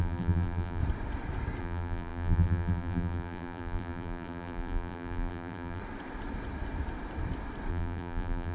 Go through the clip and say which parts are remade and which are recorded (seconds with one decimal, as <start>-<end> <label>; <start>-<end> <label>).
0.0-0.8 remade; 0.8-1.6 recorded; 1.6-5.8 remade; 5.8-7.7 recorded; 7.7-8.5 remade